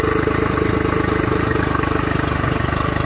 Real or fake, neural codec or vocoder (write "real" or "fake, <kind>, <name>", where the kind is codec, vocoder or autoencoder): real